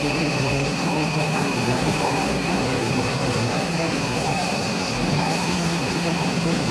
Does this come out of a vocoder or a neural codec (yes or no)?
yes